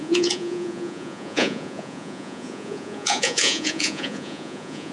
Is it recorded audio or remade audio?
remade